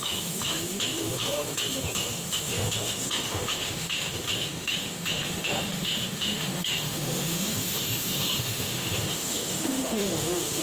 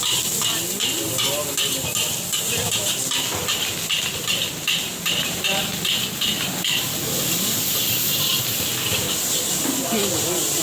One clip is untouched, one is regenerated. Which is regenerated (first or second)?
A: first